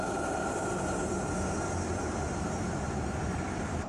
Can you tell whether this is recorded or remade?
remade